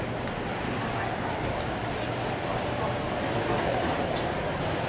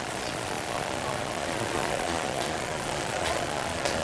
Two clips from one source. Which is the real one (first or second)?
first